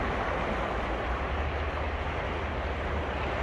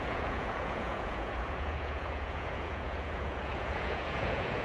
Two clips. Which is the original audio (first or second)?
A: first